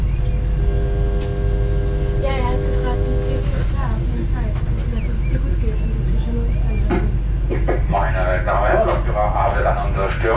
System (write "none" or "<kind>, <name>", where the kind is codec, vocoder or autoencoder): none